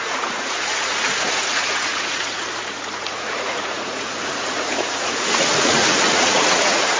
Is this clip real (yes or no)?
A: no